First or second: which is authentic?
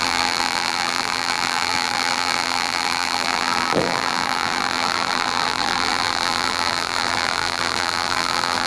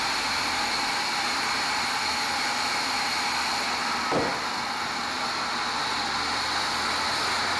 second